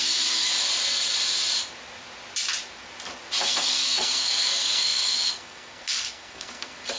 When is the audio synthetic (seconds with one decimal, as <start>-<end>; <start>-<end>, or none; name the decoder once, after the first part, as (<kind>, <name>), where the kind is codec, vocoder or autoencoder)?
0.0-0.5 (codec, SNAC); 3.4-7.0